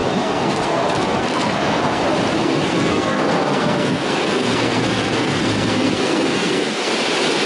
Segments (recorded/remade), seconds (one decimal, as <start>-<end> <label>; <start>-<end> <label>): 0.0-2.0 remade; 2.0-2.4 recorded; 2.4-6.9 remade; 6.9-7.5 recorded